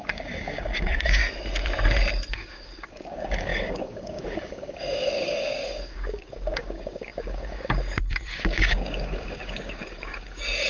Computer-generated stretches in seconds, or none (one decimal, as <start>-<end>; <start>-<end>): 0.0-1.2; 2.3-10.7